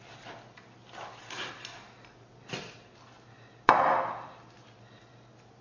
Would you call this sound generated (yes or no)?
no